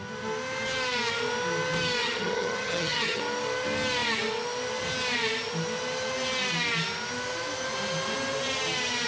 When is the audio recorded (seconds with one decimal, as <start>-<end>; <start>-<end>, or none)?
0.0-2.0; 3.2-9.1